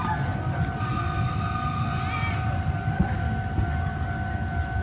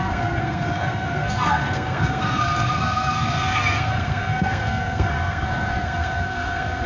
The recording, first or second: first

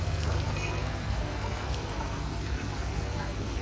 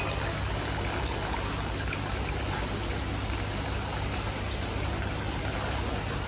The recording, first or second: second